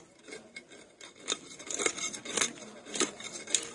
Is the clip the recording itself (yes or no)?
yes